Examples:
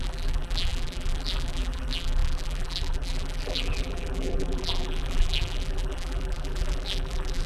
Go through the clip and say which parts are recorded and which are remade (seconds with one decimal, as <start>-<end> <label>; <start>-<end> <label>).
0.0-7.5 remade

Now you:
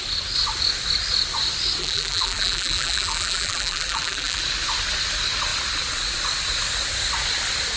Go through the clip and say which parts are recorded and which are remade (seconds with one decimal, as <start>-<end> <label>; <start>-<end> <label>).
0.0-1.8 recorded; 1.8-4.4 remade; 4.4-7.8 recorded

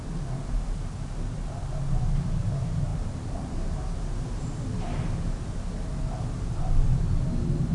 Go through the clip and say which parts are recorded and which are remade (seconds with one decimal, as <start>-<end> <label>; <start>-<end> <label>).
0.0-2.9 recorded; 2.9-5.8 remade; 5.8-7.7 recorded